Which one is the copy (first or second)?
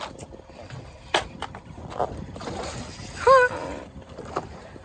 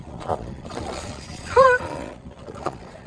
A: second